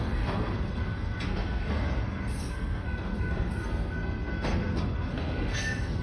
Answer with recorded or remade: remade